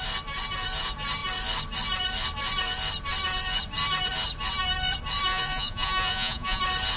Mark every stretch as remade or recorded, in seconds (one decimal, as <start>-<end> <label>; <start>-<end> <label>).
0.0-5.3 recorded; 5.3-6.6 remade; 6.6-7.0 recorded